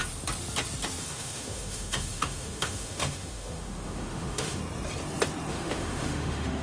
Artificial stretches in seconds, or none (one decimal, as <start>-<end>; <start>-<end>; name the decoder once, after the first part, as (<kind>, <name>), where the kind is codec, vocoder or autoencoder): 1.0-4.6 (autoencoder, DAC-VAE); 5.5-6.6